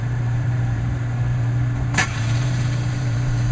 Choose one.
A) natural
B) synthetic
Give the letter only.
B